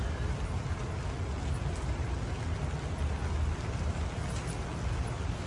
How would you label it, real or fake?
real